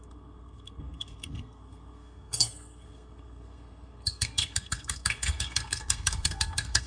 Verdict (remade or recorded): remade